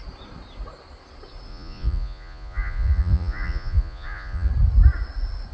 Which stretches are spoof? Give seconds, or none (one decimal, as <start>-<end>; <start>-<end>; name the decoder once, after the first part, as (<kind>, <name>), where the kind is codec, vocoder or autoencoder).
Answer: 1.5-4.5 (vocoder, Vocos)